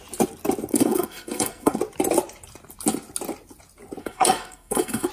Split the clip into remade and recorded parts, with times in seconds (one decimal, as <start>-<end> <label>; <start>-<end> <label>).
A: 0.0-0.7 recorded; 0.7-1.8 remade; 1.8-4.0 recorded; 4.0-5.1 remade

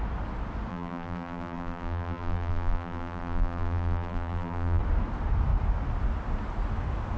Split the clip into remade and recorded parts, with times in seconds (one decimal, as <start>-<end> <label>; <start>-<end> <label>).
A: 0.0-0.7 recorded; 0.7-4.8 remade; 4.8-7.2 recorded

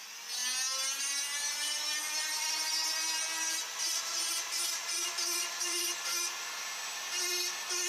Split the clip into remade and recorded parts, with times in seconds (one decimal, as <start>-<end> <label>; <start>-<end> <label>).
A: 0.0-1.4 recorded; 1.4-6.1 remade; 6.1-7.9 recorded

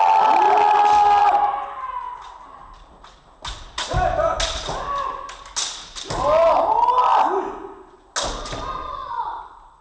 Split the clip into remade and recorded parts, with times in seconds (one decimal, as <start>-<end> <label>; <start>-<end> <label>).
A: 0.0-8.8 recorded; 8.8-9.4 remade; 9.4-9.8 recorded